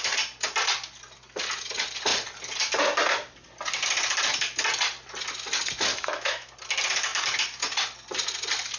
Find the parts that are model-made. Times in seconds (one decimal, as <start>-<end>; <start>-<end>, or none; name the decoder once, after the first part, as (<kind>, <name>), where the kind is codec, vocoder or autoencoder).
5.9-6.5 (autoencoder, DAC-VAE)